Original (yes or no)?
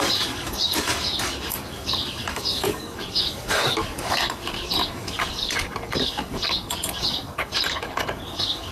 no